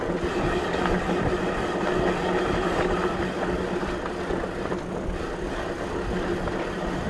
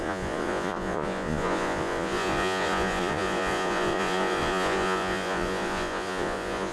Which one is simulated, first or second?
second